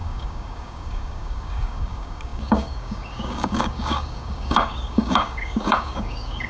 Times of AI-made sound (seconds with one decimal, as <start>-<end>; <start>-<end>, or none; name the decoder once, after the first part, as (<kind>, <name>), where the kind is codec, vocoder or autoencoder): 0.0-6.5 (codec, DAC)